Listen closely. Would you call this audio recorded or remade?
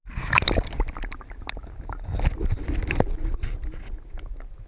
recorded